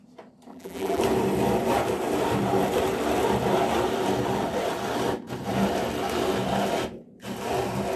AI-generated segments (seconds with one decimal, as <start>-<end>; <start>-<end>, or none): 0.5-1.0